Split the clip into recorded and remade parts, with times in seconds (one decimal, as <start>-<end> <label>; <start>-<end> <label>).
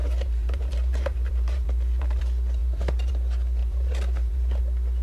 0.0-2.2 remade; 2.2-2.6 recorded; 2.6-3.1 remade; 3.1-3.6 recorded; 3.6-4.6 remade; 4.6-5.0 recorded